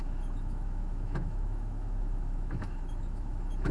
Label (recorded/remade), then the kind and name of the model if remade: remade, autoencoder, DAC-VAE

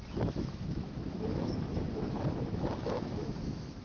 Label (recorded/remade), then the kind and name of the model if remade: remade, autoencoder, DAC-VAE